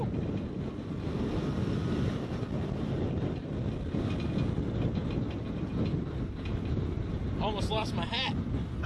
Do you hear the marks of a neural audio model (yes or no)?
no